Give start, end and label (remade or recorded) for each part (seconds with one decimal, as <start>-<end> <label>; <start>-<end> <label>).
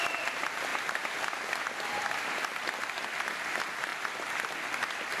0.0-5.2 recorded